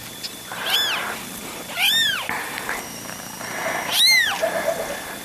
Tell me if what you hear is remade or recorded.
recorded